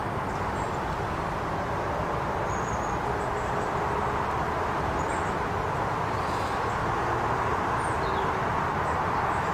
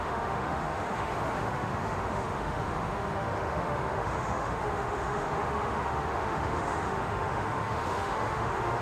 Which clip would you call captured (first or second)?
first